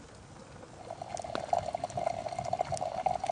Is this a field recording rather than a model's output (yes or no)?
yes